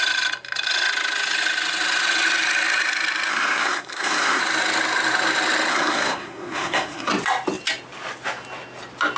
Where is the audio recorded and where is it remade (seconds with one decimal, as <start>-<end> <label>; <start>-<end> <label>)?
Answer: 0.0-3.3 recorded; 3.3-4.4 remade; 4.4-5.7 recorded; 5.7-7.1 remade; 7.1-9.2 recorded